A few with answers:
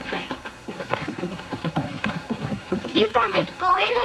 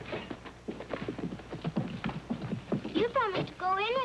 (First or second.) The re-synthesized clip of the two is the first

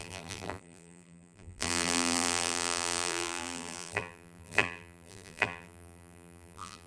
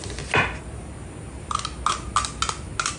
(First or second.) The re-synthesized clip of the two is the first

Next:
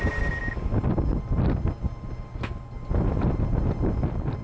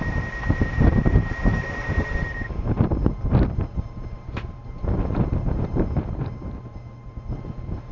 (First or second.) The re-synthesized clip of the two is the second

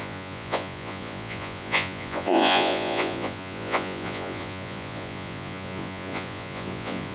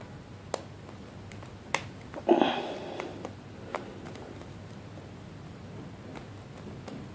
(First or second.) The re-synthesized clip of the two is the first